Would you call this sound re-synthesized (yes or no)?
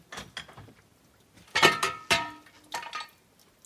no